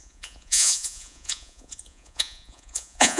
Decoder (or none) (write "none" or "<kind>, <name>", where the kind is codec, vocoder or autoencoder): vocoder, Vocos